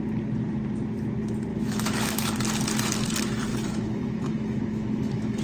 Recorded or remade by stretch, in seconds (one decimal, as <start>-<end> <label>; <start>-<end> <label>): 0.0-1.5 recorded; 1.5-2.3 remade; 2.3-3.5 recorded; 3.5-5.4 remade